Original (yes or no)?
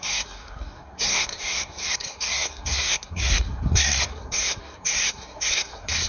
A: no